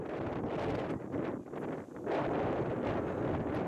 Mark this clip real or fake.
real